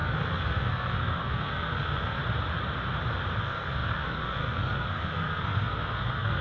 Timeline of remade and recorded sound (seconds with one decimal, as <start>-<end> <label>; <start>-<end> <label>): 0.0-2.2 remade; 2.2-3.4 recorded; 3.4-6.4 remade